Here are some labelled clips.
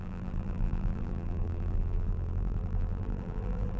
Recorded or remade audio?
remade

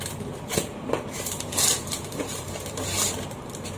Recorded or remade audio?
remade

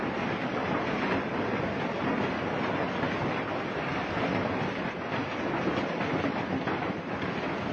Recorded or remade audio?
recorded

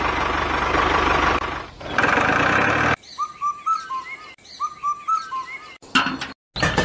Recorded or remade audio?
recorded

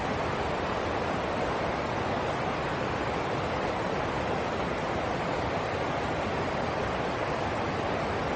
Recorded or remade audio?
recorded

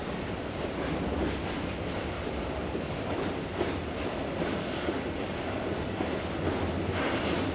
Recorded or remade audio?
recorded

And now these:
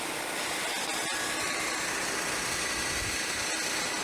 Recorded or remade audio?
recorded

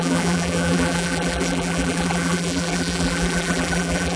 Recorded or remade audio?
remade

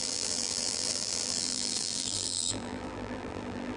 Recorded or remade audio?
remade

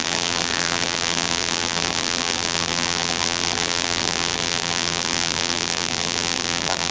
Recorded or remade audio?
remade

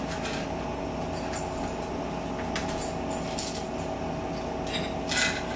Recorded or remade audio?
recorded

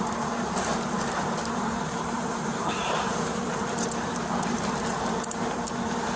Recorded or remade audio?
remade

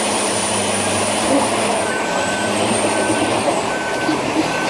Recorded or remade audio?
remade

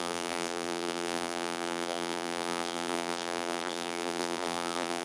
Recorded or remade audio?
remade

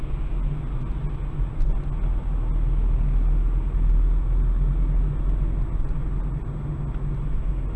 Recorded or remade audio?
recorded